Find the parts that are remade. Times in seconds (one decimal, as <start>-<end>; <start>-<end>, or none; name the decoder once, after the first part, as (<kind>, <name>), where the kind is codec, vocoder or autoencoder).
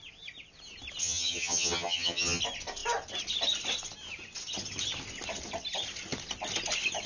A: 1.0-2.4 (vocoder, HiFi-GAN)